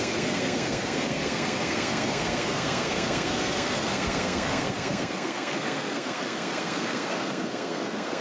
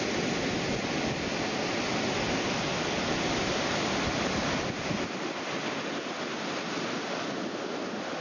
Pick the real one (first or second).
second